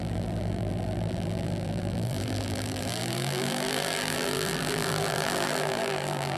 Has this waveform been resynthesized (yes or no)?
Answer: yes